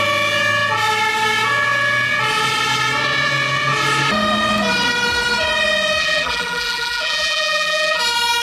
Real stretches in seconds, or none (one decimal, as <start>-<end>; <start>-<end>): 0.0-6.0; 8.0-8.4

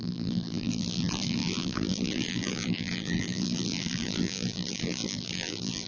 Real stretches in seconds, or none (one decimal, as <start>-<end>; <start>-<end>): none